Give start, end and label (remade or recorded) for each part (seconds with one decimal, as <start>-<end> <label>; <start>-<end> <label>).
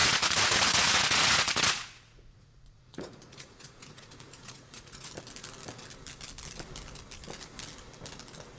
0.0-5.1 remade; 5.1-8.6 recorded